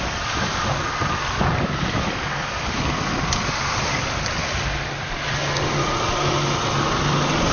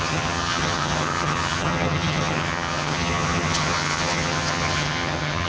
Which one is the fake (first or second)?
second